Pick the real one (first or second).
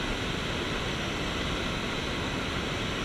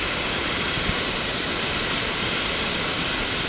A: first